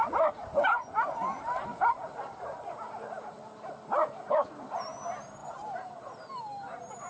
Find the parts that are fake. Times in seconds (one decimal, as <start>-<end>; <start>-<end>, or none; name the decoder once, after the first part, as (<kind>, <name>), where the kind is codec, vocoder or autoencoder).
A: none